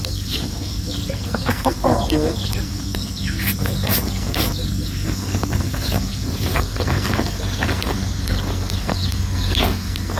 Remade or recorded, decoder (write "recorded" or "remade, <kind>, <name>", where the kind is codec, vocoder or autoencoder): remade, codec, SNAC